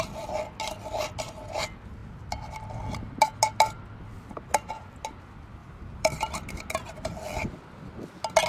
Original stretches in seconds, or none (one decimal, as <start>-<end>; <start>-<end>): 0.0-5.6; 6.6-8.5